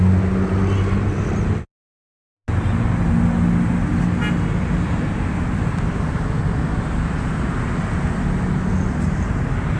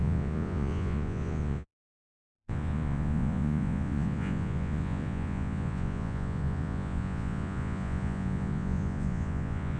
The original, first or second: first